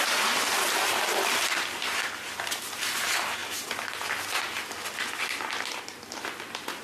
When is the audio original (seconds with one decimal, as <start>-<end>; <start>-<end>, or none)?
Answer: 3.4-6.8